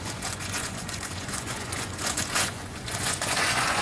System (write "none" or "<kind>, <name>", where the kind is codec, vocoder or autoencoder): vocoder, Vocos